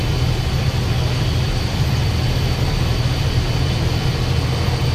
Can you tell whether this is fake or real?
real